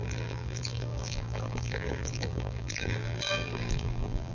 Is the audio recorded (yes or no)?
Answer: no